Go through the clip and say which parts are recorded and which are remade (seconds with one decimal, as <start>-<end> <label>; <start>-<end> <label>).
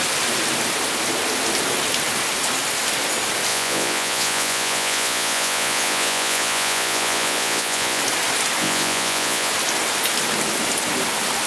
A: 0.0-3.5 recorded; 3.5-8.0 remade; 8.0-8.6 recorded; 8.6-9.5 remade; 9.5-11.5 recorded